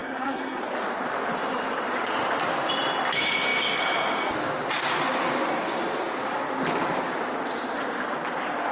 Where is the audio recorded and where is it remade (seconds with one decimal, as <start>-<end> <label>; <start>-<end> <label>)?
0.0-0.6 remade; 0.6-8.7 recorded